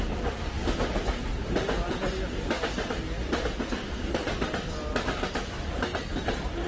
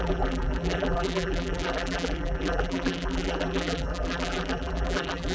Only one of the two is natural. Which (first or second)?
first